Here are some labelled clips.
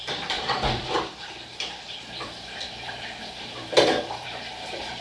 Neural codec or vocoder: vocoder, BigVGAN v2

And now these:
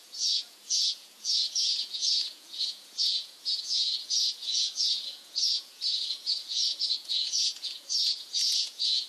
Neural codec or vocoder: vocoder, Vocos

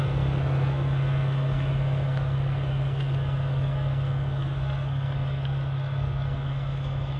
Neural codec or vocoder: codec, SNAC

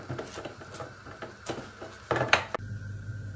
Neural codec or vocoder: none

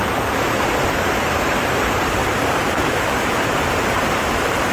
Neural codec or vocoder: vocoder, BigVGAN v2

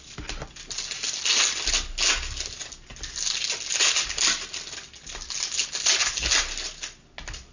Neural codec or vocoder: none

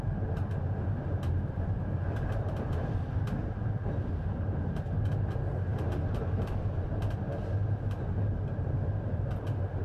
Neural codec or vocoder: none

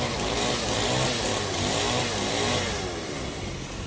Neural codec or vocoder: none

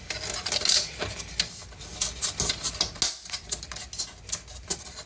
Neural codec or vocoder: none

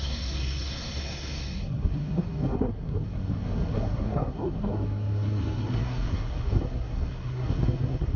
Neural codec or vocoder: codec, SNAC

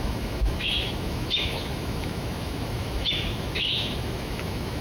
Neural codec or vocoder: autoencoder, DAC-VAE